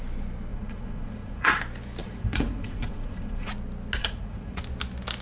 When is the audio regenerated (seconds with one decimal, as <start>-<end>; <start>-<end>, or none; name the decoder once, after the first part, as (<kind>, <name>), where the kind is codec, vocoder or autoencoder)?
0.5-1.6 (vocoder, Vocos); 2.0-3.5; 4.0-4.6